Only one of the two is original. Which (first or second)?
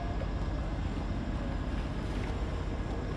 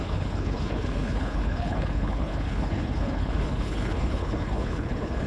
first